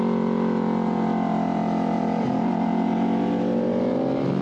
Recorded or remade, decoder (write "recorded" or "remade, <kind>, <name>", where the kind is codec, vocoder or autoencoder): recorded